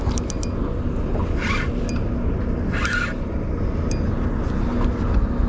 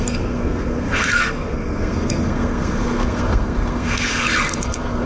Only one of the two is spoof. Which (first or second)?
second